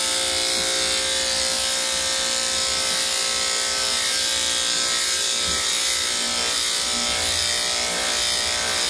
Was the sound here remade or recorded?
recorded